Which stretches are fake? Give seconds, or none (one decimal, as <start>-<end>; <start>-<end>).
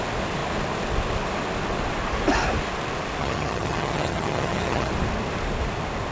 3.2-4.9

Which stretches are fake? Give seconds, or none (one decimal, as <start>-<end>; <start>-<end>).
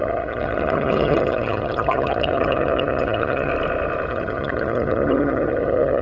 0.0-3.5; 4.1-6.0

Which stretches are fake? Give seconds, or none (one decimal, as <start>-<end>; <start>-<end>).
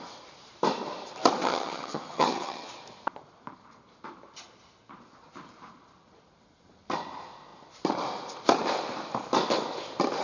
1.4-2.7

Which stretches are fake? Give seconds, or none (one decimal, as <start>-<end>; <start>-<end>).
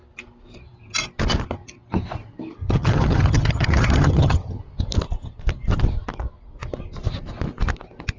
2.6-4.6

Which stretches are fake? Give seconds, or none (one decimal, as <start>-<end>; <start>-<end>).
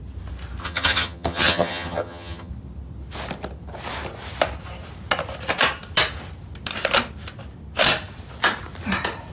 0.6-2.5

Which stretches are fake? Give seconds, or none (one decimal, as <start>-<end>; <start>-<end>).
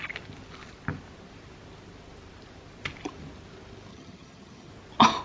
3.9-4.7